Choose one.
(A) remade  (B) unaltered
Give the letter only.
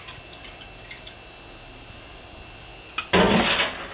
B